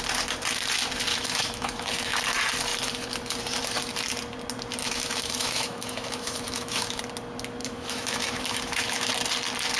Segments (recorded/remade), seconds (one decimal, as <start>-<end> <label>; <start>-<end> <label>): 0.0-1.1 recorded; 1.1-2.2 remade; 2.2-4.8 recorded; 4.8-7.0 remade; 7.0-7.6 recorded; 7.6-9.1 remade; 9.1-9.8 recorded